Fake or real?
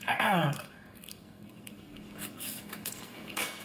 fake